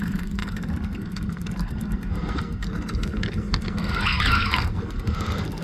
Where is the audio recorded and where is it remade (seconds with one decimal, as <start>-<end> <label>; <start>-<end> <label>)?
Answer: 0.0-5.6 remade